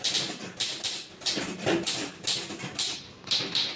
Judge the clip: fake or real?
real